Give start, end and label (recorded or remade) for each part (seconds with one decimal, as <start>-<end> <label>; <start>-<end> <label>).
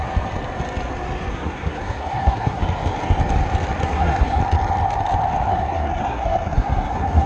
0.0-1.3 recorded; 1.3-2.6 remade; 2.6-3.8 recorded; 3.8-4.4 remade; 4.4-5.5 recorded; 5.5-7.3 remade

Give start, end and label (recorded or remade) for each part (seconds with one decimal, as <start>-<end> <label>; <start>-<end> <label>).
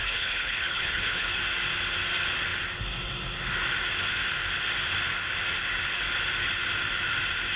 0.0-1.4 remade; 1.4-7.6 recorded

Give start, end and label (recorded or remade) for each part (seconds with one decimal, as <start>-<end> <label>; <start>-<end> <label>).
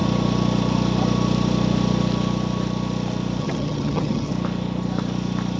0.0-3.4 recorded; 3.4-4.3 remade; 4.3-5.6 recorded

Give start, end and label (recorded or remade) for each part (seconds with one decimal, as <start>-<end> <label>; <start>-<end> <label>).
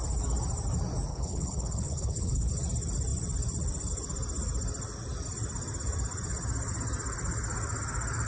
0.0-1.1 recorded; 1.1-2.5 remade; 2.5-8.3 recorded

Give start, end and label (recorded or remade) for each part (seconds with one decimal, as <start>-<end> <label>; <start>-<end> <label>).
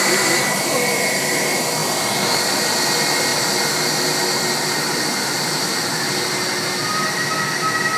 0.0-8.0 recorded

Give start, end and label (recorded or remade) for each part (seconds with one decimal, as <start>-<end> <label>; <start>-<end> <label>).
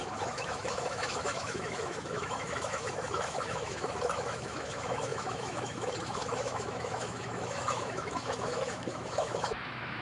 0.0-10.0 remade